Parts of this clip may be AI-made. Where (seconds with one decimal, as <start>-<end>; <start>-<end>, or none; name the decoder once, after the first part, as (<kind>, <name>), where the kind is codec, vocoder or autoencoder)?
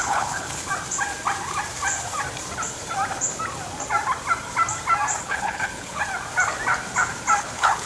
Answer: 0.0-0.7 (codec, HILCodec); 5.2-6.0; 7.4-7.9